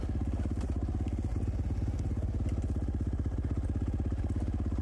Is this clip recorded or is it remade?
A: recorded